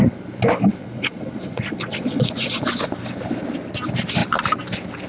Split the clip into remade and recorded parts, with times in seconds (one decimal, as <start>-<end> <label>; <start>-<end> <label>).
0.0-0.8 recorded; 0.8-2.6 remade; 2.6-5.1 recorded

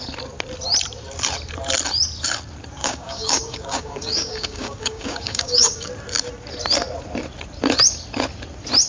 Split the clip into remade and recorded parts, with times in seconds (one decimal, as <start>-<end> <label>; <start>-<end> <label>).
0.0-2.8 recorded; 2.8-5.9 remade; 5.9-8.9 recorded

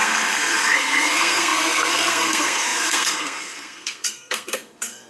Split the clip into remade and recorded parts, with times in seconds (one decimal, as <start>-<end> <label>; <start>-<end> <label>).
0.0-5.1 remade

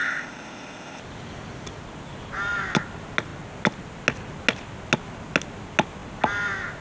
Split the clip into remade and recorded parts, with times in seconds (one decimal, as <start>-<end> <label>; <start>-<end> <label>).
0.0-1.0 remade; 1.0-6.8 recorded